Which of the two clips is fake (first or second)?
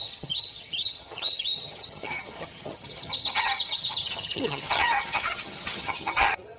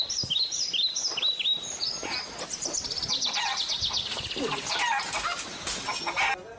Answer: first